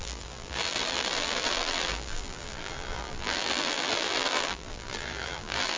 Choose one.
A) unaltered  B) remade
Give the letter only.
B